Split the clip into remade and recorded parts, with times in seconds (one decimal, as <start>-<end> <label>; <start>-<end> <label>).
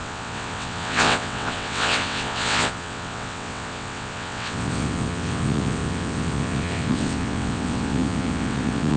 0.0-9.0 remade